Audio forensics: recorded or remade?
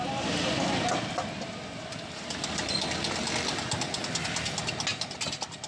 recorded